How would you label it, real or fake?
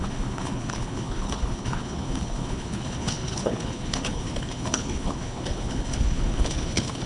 fake